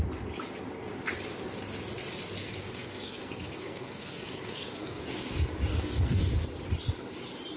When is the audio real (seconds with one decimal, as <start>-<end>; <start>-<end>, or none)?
0.0-2.4; 5.0-5.7; 6.2-7.6

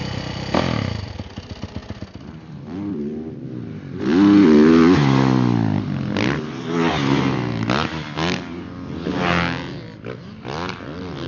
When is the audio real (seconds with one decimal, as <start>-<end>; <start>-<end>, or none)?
0.0-11.3

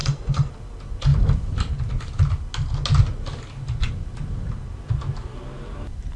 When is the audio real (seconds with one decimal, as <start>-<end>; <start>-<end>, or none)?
0.5-6.2

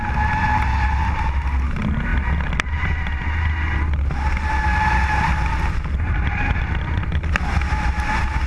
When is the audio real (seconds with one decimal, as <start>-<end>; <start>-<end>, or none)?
0.0-8.5

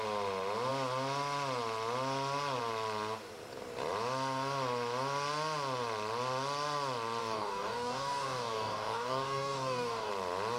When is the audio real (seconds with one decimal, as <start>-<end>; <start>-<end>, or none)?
0.0-7.2; 10.1-10.6